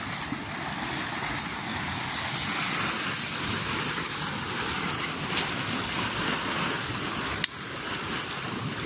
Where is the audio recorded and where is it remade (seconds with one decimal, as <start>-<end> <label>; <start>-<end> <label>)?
0.0-8.9 recorded